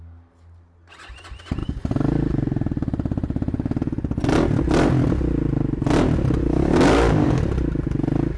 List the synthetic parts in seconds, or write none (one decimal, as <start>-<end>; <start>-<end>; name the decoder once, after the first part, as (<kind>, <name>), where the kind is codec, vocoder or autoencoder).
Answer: 6.4-7.4 (codec, DAC)